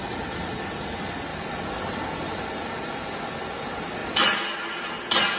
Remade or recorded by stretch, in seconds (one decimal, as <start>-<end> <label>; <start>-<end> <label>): 0.0-5.4 recorded